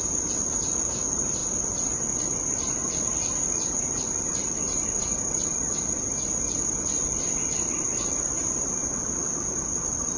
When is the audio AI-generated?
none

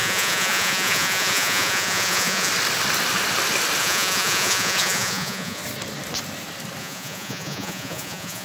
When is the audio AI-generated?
0.0-2.5 (vocoder, Vocos); 3.8-5.6; 6.8-8.4

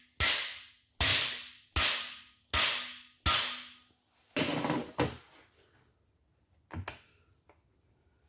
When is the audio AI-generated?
none